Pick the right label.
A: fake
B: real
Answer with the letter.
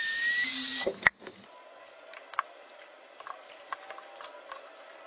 B